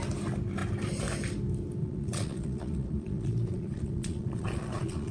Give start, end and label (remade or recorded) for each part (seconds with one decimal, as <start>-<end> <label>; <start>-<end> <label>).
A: 0.0-1.8 recorded; 1.8-5.1 remade